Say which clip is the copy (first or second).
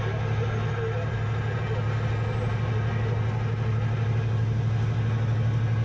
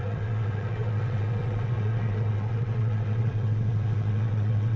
second